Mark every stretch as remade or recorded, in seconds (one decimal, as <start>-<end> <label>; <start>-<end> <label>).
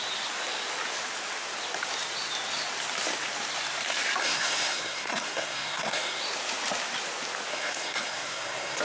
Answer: 0.0-4.2 recorded; 4.2-6.2 remade; 6.2-7.5 recorded; 7.5-8.8 remade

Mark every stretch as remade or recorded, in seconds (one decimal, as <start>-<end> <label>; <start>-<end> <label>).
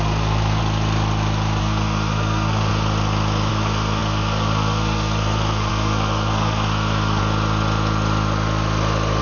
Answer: 0.0-0.6 remade; 0.6-1.6 recorded; 1.6-2.7 remade; 2.7-3.5 recorded; 3.5-7.2 remade; 7.2-9.2 recorded